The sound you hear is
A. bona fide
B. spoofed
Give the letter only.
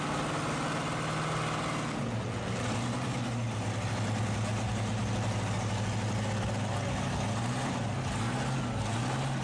A